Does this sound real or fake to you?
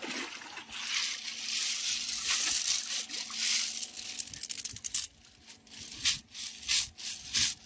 real